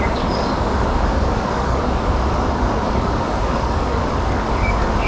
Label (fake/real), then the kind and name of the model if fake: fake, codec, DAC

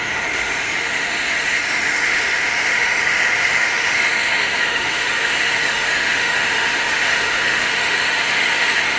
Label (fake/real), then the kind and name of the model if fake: fake, autoencoder, DAC-VAE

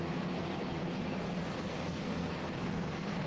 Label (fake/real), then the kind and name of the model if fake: fake, codec, SNAC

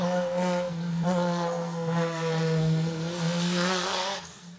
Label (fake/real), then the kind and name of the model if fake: fake, codec, SNAC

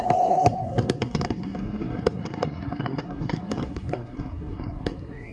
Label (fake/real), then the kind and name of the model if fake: fake, codec, SNAC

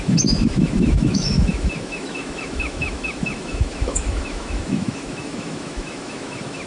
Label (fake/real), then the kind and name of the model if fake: fake, autoencoder, DAC-VAE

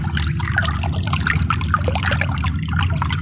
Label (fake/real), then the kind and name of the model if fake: real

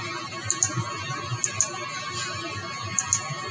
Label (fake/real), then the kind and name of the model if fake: real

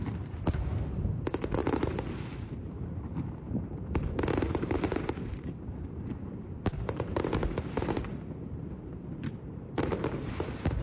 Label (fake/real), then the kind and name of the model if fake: fake, vocoder, BigVGAN v2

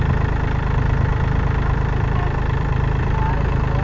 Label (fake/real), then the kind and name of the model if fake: real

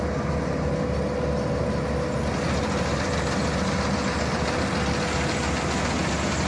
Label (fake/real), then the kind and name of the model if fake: real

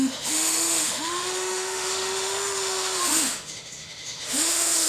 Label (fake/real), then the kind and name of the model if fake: fake, autoencoder, DAC-VAE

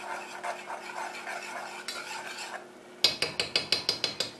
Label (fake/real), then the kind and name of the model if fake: real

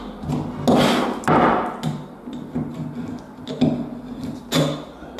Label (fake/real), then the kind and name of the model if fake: real